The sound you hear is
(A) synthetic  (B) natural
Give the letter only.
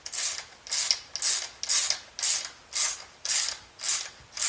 B